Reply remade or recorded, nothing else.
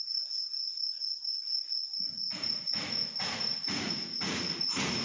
remade